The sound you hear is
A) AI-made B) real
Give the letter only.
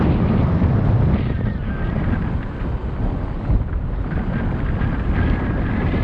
B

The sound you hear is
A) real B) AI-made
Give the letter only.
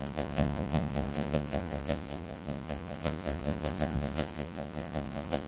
B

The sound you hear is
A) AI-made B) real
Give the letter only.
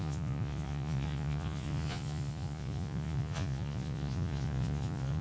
A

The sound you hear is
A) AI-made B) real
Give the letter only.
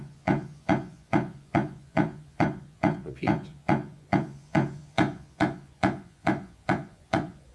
A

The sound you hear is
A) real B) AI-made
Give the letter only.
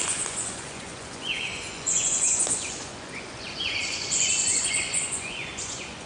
B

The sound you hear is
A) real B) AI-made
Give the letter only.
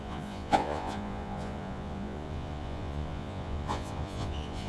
B